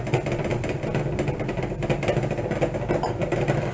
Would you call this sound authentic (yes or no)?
yes